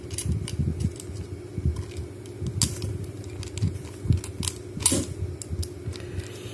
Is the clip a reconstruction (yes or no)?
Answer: no